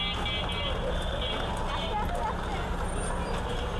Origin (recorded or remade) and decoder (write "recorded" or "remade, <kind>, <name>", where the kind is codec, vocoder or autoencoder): recorded